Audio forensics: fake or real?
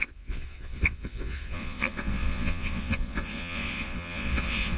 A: fake